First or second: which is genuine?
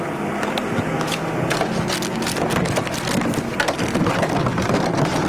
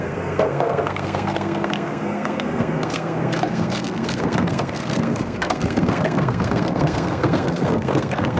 first